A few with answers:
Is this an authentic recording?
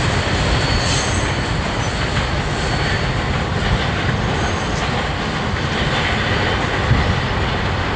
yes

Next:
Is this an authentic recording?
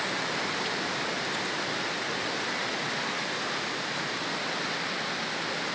yes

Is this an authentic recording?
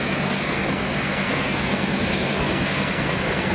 no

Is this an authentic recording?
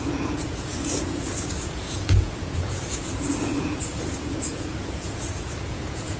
no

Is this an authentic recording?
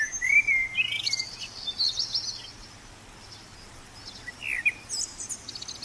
yes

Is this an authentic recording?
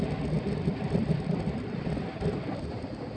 yes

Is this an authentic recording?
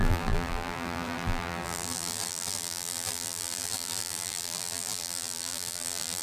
no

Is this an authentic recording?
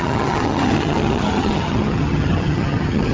no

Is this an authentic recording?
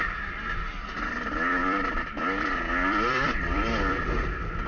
no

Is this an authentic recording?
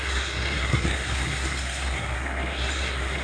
no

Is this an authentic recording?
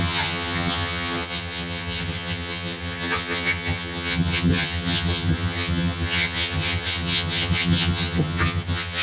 no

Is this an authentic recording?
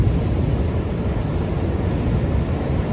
yes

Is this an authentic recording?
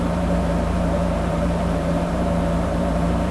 no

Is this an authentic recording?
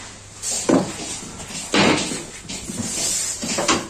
yes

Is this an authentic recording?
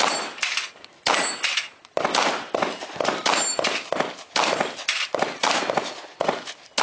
yes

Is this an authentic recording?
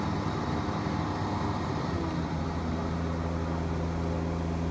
yes